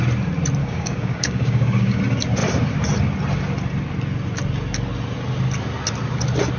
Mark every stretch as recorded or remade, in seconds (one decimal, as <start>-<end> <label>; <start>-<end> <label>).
0.0-0.6 recorded; 0.6-2.0 remade; 2.0-6.6 recorded